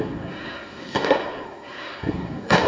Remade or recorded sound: remade